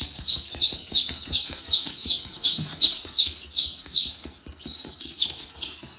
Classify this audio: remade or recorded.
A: remade